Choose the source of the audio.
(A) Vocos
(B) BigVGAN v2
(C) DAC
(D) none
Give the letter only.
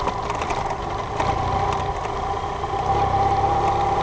D